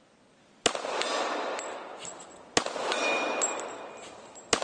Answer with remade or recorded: recorded